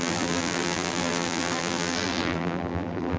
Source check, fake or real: fake